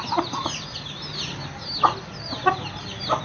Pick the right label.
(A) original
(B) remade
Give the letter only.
A